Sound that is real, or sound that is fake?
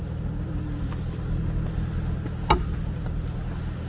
real